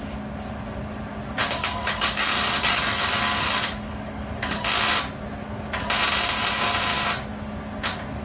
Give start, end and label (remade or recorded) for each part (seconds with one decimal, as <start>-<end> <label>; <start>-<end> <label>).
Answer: 0.0-1.4 recorded; 1.4-4.6 remade; 4.6-8.2 recorded